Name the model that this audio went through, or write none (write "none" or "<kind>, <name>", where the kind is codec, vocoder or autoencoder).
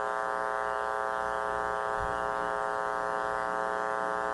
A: none